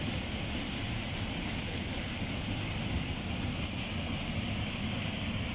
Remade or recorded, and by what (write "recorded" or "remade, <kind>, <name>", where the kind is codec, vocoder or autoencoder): recorded